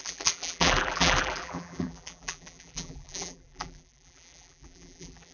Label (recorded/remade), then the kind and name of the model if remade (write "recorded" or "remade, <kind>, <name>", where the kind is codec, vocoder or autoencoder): remade, vocoder, BigVGAN v2